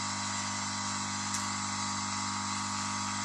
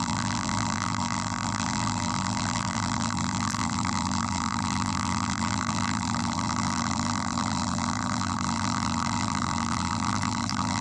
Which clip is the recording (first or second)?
first